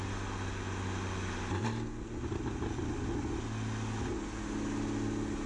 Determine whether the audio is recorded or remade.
recorded